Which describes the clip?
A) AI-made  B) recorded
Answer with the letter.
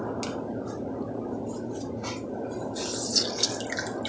B